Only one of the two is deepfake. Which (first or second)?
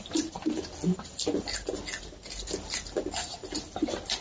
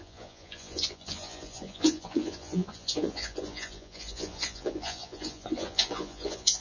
second